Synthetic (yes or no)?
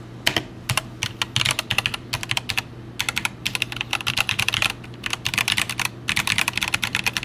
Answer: no